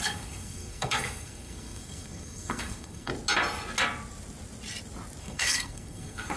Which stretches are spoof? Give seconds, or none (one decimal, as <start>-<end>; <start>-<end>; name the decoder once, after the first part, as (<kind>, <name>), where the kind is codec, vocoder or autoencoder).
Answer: 0.0-3.1 (codec, SNAC); 5.2-6.4